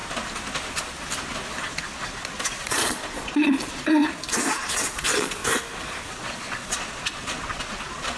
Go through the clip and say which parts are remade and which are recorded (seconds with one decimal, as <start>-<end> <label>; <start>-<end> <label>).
0.0-1.7 recorded; 1.7-4.0 remade; 4.0-4.7 recorded; 4.7-5.4 remade; 5.4-6.1 recorded; 6.1-8.2 remade

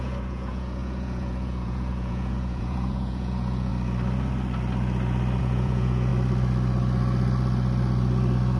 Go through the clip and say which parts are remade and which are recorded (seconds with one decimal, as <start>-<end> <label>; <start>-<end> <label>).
0.0-3.7 remade; 3.7-5.4 recorded; 5.4-6.1 remade; 6.1-8.6 recorded

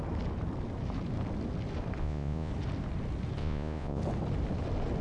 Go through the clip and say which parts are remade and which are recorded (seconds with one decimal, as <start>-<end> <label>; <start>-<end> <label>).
0.0-2.0 recorded; 2.0-2.5 remade; 2.5-3.4 recorded; 3.4-4.0 remade; 4.0-5.0 recorded

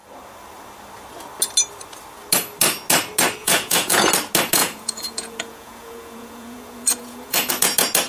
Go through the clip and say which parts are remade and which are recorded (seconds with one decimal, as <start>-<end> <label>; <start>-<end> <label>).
0.0-3.4 recorded; 3.4-4.1 remade; 4.1-4.6 recorded; 4.6-7.5 remade; 7.5-8.1 recorded

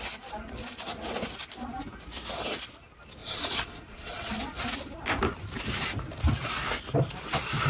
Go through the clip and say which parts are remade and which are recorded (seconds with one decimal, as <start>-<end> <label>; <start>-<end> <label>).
0.0-3.2 recorded; 3.2-4.3 remade; 4.3-7.7 recorded

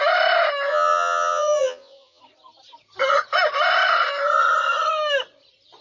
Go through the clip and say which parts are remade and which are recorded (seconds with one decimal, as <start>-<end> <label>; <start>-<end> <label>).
0.0-0.7 recorded; 0.7-2.2 remade; 2.2-5.8 recorded

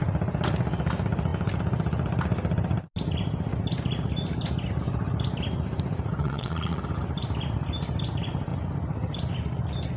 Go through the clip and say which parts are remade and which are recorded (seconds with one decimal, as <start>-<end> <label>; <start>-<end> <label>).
0.0-6.2 recorded; 6.2-6.8 remade; 6.8-10.0 recorded

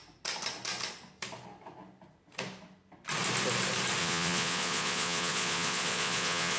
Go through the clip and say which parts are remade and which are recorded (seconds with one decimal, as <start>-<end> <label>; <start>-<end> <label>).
0.0-4.0 recorded; 4.0-6.6 remade